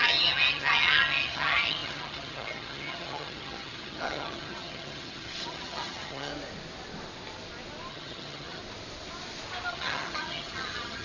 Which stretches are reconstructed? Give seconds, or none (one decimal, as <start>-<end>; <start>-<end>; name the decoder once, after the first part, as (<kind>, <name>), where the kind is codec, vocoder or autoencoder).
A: 0.0-6.3 (vocoder, HiFi-GAN); 7.9-8.6; 9.7-11.0